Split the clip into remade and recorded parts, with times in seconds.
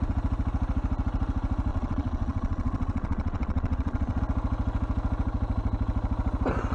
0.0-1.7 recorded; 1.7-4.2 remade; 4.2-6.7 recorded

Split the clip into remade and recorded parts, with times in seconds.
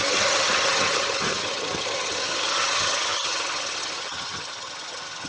0.0-5.3 remade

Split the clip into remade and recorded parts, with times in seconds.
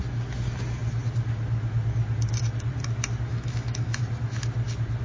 0.0-3.3 recorded; 3.3-4.0 remade; 4.0-5.0 recorded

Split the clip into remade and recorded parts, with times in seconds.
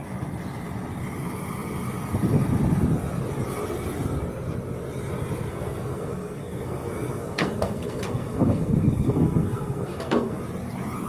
0.0-5.5 recorded; 5.5-10.4 remade; 10.4-11.1 recorded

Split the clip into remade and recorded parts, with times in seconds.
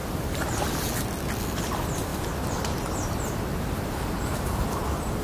0.0-0.7 remade; 0.7-2.1 recorded; 2.1-4.5 remade; 4.5-5.2 recorded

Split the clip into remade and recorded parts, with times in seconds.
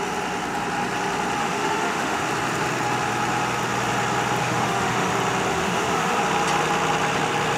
0.0-1.4 recorded; 1.4-2.2 remade; 2.2-4.4 recorded; 4.4-5.1 remade; 5.1-5.5 recorded; 5.5-6.2 remade; 6.2-7.6 recorded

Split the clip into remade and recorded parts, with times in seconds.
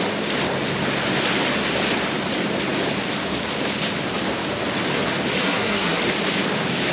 0.0-5.4 recorded; 5.4-6.0 remade; 6.0-6.9 recorded